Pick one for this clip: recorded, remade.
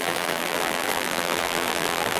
remade